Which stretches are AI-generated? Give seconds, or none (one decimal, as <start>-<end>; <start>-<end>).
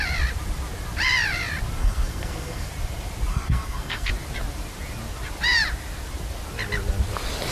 1.8-2.7; 3.3-4.1